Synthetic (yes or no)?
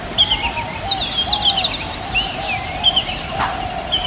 no